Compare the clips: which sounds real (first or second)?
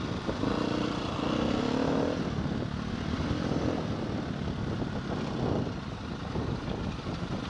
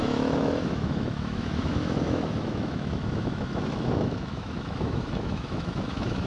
first